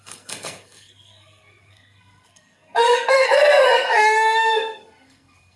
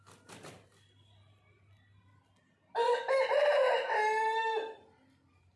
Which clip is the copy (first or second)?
first